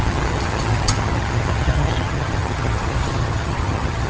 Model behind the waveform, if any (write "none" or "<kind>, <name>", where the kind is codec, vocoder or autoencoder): vocoder, HiFi-GAN